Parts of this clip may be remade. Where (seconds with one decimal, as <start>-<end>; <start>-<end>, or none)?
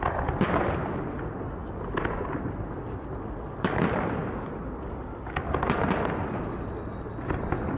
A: none